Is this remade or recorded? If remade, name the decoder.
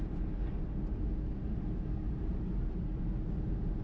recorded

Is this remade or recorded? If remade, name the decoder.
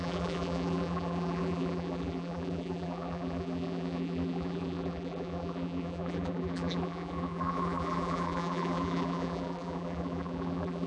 remade, vocoder, BigVGAN v2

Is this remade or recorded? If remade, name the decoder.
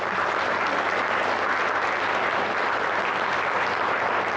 recorded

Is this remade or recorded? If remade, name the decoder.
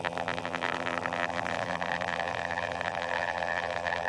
remade, vocoder, BigVGAN v2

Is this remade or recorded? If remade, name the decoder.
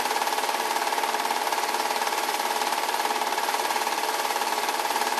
remade, vocoder, BigVGAN v2